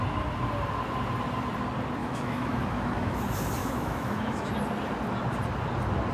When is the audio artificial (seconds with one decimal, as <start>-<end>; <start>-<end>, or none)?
2.0-3.2; 3.6-4.5